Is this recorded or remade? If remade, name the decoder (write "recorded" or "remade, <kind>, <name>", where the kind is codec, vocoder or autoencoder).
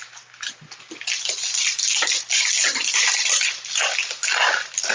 recorded